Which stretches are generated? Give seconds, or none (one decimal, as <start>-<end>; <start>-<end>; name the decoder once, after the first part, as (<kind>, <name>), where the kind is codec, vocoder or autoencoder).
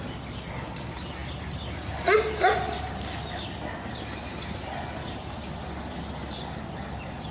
none